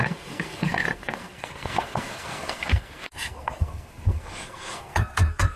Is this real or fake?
fake